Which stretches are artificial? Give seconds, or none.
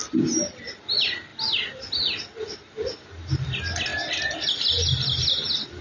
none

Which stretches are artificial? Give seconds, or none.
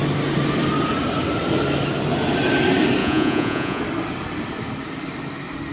3.0-3.8 (vocoder, Vocos)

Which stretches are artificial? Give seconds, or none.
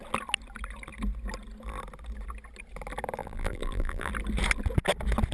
3.2-4.1 (vocoder, BigVGAN v2)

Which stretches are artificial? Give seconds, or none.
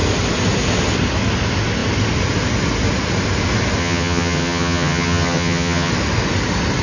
3.8-5.9 (vocoder, HiFi-GAN)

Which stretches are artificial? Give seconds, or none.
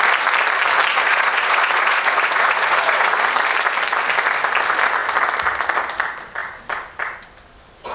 0.9-3.1 (vocoder, Vocos)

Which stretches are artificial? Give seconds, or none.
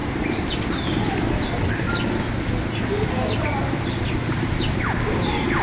none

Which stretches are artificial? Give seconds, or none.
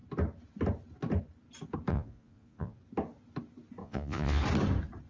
1.9-2.8 (vocoder, Vocos); 3.8-4.4